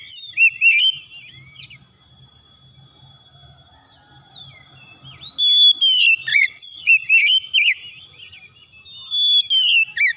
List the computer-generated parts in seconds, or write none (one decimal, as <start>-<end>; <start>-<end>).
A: 6.3-6.9